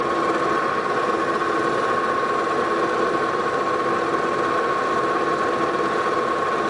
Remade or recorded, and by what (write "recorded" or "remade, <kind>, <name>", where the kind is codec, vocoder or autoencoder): recorded